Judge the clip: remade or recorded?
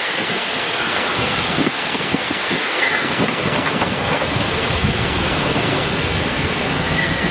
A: remade